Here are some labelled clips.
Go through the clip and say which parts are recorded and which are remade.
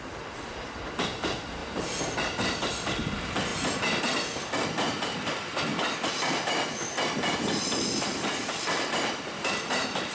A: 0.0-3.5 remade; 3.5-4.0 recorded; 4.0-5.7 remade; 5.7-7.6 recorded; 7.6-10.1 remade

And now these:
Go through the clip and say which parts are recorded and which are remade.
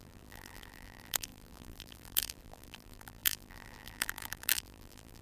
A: 0.0-5.2 remade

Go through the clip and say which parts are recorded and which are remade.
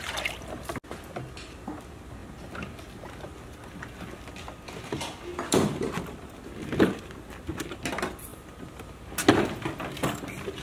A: 0.0-5.3 recorded; 5.3-6.5 remade; 6.5-8.3 recorded; 8.3-9.1 remade; 9.1-10.6 recorded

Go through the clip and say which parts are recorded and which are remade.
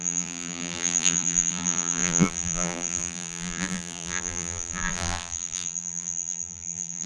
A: 0.0-7.1 remade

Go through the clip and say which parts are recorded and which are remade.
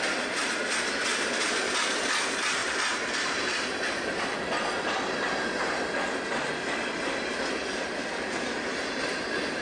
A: 0.0-1.1 recorded; 1.1-2.1 remade; 2.1-2.6 recorded; 2.6-4.2 remade; 4.2-9.6 recorded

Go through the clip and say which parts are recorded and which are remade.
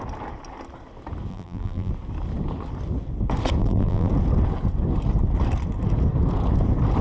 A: 0.0-1.3 recorded; 1.3-1.9 remade; 1.9-3.6 recorded; 3.6-4.1 remade; 4.1-7.0 recorded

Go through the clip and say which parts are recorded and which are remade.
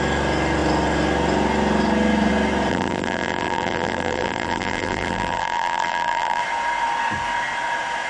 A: 0.0-2.7 recorded; 2.7-6.4 remade; 6.4-8.1 recorded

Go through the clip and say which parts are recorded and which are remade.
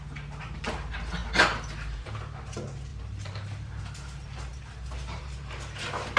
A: 0.0-2.9 recorded; 2.9-3.8 remade; 3.8-4.5 recorded; 4.5-5.7 remade; 5.7-6.2 recorded